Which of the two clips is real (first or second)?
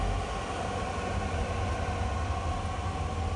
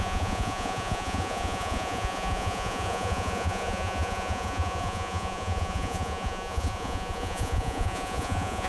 first